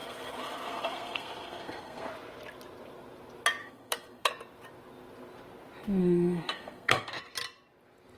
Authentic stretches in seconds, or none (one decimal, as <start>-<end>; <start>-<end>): 2.1-3.6; 4.3-6.0; 7.1-8.2